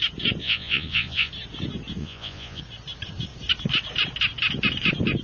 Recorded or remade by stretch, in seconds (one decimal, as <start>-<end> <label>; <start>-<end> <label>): 0.0-0.4 recorded; 0.4-1.3 remade; 1.3-2.0 recorded; 2.0-2.6 remade; 2.6-5.2 recorded